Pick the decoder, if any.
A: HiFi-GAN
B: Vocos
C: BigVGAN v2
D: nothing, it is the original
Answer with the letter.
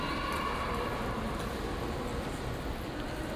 D